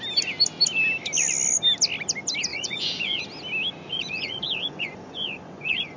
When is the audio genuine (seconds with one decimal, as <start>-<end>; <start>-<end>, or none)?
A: 0.0-2.5; 3.2-3.9

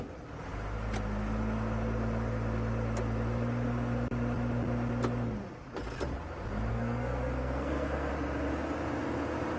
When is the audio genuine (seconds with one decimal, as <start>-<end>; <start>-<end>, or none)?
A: 0.0-6.7; 8.1-9.6

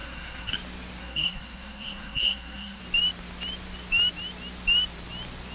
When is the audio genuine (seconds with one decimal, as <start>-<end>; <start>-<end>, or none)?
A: 0.5-1.0; 2.8-5.5

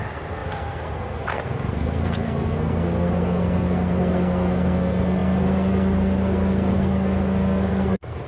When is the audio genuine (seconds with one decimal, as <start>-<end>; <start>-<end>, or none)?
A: none

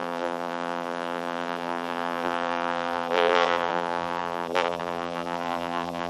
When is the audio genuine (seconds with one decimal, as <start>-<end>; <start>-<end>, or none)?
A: none

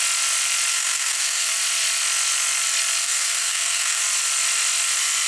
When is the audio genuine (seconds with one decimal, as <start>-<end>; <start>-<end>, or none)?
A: 0.0-0.7; 1.5-3.0; 4.0-5.3

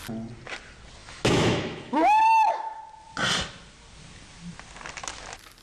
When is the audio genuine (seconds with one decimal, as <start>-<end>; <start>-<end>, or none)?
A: 0.0-1.0; 2.8-5.6

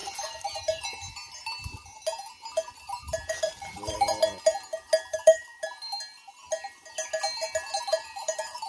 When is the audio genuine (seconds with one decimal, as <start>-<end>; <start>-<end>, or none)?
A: 2.0-2.6; 4.1-5.1; 5.5-7.8